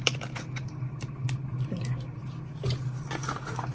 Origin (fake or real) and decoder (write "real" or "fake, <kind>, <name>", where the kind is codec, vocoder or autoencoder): real